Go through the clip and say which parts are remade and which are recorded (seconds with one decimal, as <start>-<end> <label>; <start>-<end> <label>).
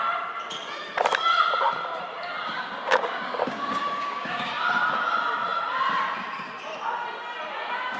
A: 0.0-2.4 recorded; 2.4-4.5 remade; 4.5-8.0 recorded